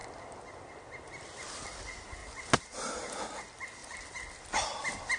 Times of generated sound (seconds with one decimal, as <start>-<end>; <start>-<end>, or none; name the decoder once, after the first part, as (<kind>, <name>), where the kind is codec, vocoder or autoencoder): none